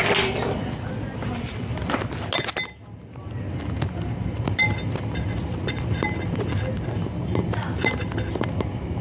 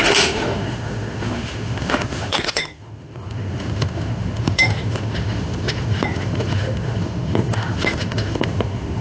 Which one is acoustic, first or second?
first